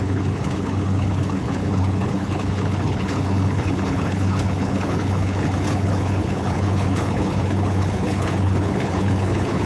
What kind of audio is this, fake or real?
fake